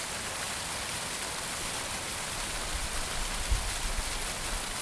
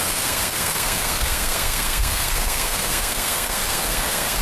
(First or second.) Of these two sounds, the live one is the first